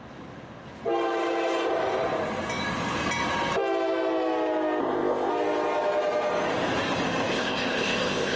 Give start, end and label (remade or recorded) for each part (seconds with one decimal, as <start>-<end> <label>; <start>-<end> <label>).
0.0-4.8 recorded; 4.8-5.3 remade; 5.3-7.3 recorded; 7.3-8.4 remade